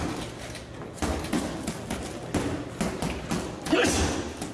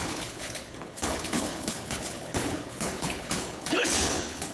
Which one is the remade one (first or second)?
second